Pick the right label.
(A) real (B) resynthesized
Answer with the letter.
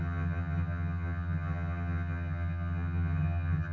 B